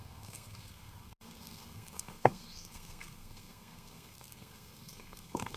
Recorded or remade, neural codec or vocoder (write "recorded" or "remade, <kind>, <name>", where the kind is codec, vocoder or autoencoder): remade, codec, SNAC